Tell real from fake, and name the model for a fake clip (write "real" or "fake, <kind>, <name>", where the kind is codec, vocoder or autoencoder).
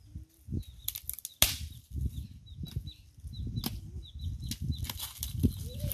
real